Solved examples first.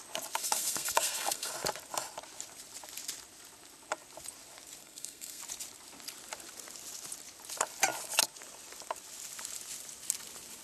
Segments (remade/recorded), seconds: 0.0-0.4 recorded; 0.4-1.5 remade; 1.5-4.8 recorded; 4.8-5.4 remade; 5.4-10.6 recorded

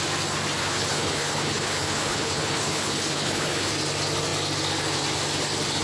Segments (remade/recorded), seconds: 0.0-0.6 recorded; 0.6-3.7 remade; 3.7-5.8 recorded

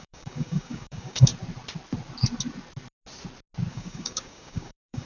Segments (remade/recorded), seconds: 0.0-1.3 remade; 1.3-3.7 recorded; 3.7-5.1 remade

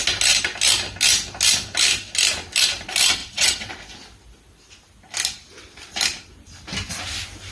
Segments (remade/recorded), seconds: 0.0-3.2 recorded; 3.2-3.7 remade; 3.7-7.5 recorded

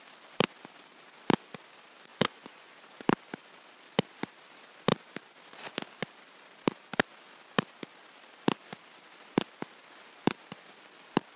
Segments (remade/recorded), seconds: 0.0-2.1 recorded; 2.1-2.7 remade; 2.7-11.4 recorded

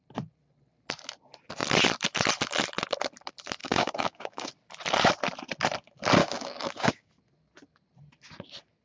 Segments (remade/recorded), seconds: 0.0-3.6 recorded; 3.6-4.5 remade; 4.5-6.2 recorded; 6.2-7.1 remade; 7.1-8.8 recorded